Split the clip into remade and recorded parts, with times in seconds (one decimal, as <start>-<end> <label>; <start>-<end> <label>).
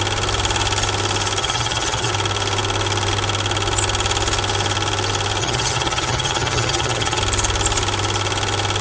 0.0-1.4 recorded; 1.4-2.1 remade; 2.1-5.4 recorded; 5.4-7.2 remade; 7.2-8.8 recorded